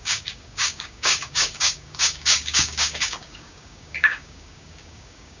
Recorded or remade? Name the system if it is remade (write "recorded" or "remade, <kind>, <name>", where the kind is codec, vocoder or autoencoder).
remade, codec, DAC